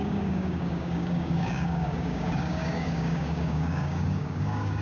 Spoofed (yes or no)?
yes